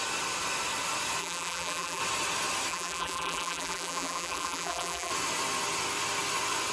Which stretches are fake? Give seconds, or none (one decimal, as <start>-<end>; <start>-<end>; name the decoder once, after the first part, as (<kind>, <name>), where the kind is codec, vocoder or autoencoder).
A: 1.2-2.0 (vocoder, BigVGAN v2); 2.7-5.1